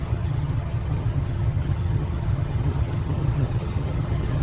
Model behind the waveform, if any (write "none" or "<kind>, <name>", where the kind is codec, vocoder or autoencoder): vocoder, HiFi-GAN